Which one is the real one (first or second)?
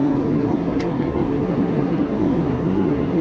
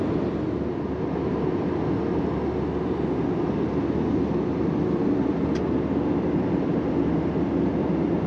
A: second